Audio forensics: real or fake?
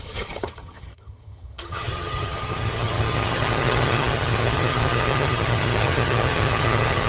fake